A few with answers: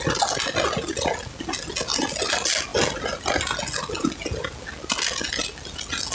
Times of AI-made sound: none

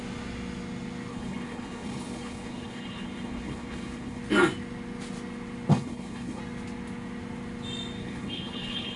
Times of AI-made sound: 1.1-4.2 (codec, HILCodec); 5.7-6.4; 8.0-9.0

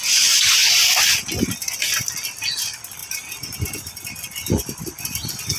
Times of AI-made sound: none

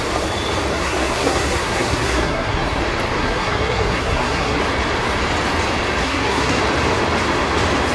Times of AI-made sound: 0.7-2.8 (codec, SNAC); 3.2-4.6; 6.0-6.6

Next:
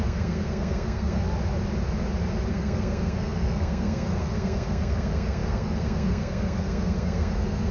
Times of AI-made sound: 0.0-1.2 (codec, SNAC); 2.5-7.7

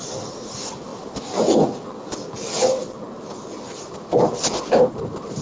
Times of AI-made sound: none